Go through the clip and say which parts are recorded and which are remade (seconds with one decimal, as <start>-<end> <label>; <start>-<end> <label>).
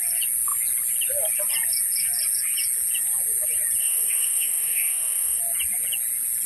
0.0-3.8 recorded; 3.8-5.4 remade; 5.4-6.5 recorded